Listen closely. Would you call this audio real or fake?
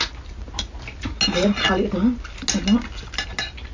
real